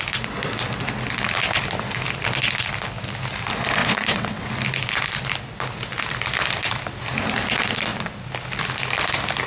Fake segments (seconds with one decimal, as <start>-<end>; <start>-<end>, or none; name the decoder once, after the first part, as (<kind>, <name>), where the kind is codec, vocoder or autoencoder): 3.8-4.5 (vocoder, WaveNeXt)